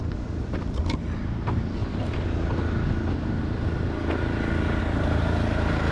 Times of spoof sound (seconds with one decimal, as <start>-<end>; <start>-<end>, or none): none